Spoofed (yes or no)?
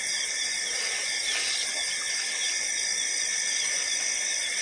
no